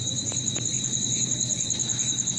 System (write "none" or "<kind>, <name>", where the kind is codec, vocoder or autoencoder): vocoder, BigVGAN v2